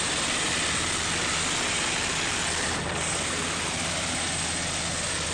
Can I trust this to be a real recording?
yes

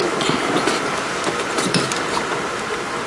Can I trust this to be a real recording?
yes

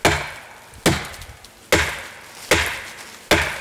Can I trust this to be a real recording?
yes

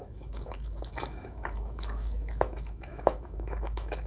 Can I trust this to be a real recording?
no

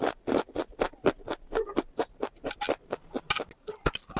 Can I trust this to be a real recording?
yes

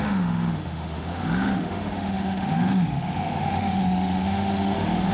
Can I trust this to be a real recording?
no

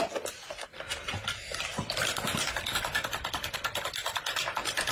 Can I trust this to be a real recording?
yes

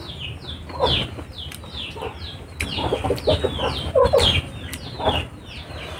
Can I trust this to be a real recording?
yes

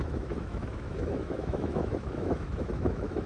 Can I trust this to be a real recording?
no